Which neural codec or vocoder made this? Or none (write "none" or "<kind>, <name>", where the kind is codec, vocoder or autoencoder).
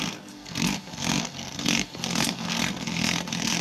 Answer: codec, SNAC